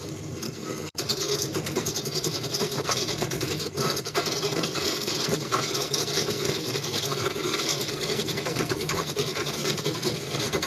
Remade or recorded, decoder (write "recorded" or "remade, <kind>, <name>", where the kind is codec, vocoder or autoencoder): remade, codec, SNAC